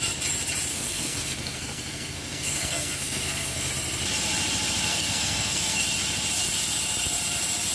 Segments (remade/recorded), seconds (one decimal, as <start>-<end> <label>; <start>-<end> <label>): 0.0-0.7 recorded; 0.7-3.7 remade; 3.7-4.9 recorded; 4.9-5.8 remade; 5.8-7.7 recorded